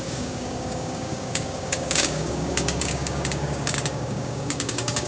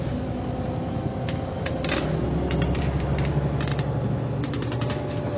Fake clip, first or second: first